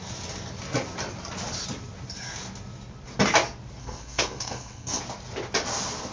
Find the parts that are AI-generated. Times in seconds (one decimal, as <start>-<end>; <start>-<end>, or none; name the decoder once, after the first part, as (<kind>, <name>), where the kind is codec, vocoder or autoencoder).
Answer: 3.8-5.0 (codec, SNAC)